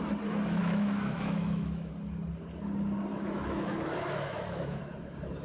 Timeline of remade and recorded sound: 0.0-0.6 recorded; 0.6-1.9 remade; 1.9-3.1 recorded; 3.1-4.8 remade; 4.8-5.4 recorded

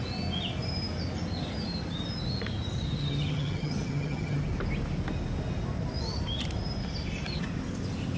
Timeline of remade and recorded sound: 0.0-3.0 recorded; 3.0-4.4 remade; 4.4-8.2 recorded

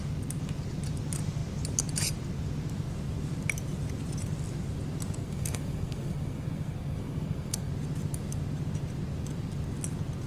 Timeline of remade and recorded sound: 0.0-5.2 recorded; 5.2-7.7 remade; 7.7-10.3 recorded

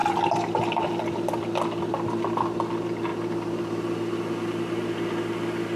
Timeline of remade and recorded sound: 0.0-5.8 recorded

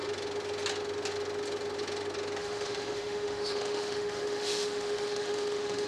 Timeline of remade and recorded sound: 0.0-2.4 recorded; 2.4-5.9 remade

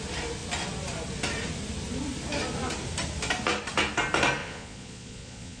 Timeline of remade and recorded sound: 0.0-4.4 recorded; 4.4-5.6 remade

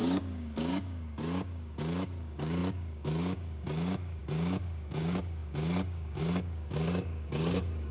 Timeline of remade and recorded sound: 0.0-7.9 remade